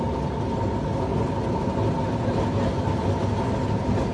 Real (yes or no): yes